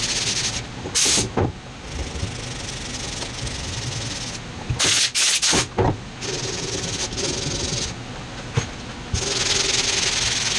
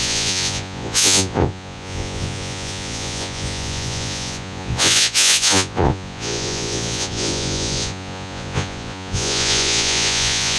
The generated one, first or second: second